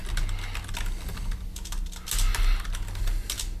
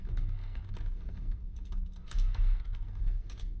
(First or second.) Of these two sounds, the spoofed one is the second